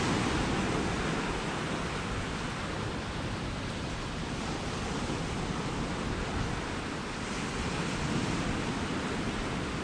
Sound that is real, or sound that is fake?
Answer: real